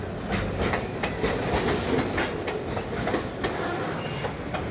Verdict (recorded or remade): recorded